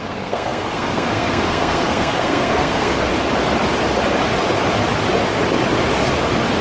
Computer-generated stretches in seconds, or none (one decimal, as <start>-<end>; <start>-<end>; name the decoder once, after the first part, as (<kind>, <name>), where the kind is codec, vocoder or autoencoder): 0.0-3.1 (codec, SNAC)